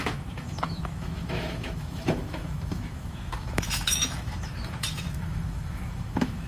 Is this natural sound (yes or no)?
no